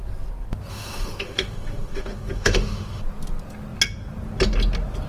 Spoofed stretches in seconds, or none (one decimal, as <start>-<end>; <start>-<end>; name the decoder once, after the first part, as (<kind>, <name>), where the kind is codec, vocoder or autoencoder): 0.7-3.0 (autoencoder, DAC-VAE)